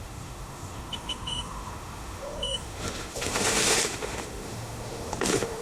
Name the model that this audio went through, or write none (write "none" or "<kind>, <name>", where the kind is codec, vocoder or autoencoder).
autoencoder, DAC-VAE